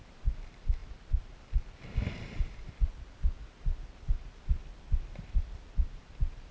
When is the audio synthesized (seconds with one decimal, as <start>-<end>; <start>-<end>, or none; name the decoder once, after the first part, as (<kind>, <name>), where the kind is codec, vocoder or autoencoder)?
none